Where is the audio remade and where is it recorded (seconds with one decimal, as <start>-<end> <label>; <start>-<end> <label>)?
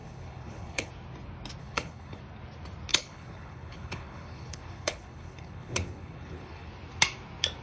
0.0-0.9 remade; 0.9-1.6 recorded; 1.6-2.2 remade; 2.2-2.9 recorded; 2.9-6.7 remade; 6.7-7.6 recorded